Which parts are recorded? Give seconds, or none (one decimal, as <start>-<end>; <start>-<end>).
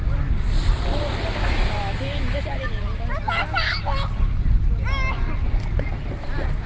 0.0-1.4; 2.4-6.7